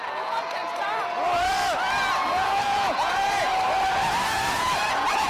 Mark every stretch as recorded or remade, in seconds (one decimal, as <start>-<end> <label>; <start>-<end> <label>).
0.0-0.6 remade; 0.6-2.2 recorded; 2.2-3.5 remade; 3.5-4.2 recorded; 4.2-5.3 remade